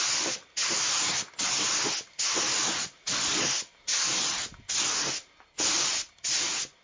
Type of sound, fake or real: real